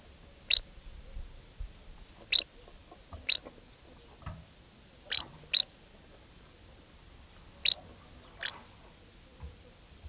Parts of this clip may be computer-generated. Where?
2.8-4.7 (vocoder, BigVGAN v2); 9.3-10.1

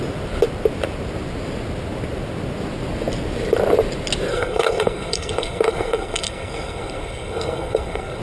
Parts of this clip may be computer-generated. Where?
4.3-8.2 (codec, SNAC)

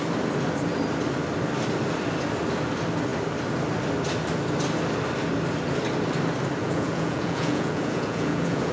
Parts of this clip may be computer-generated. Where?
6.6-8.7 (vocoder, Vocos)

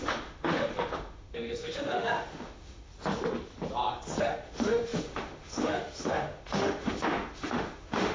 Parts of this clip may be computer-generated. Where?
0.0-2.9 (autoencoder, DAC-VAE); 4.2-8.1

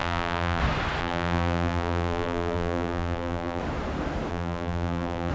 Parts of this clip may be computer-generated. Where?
0.0-0.6 (vocoder, BigVGAN v2); 1.0-3.6; 4.3-5.3

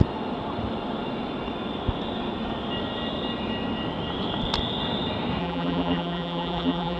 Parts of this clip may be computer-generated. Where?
5.4-7.0 (vocoder, BigVGAN v2)